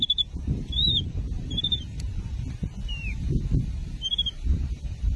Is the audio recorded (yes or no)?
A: no